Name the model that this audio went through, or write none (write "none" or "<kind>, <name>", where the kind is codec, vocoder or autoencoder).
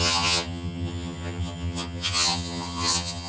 vocoder, HiFi-GAN